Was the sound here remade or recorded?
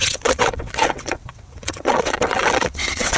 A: remade